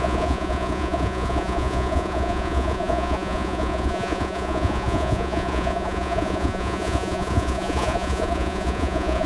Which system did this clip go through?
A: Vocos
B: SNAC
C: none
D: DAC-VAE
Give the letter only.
A